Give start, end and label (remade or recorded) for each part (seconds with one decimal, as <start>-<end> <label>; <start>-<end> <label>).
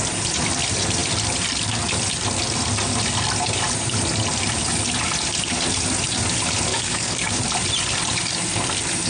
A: 0.0-6.7 recorded; 6.7-7.4 remade; 7.4-9.1 recorded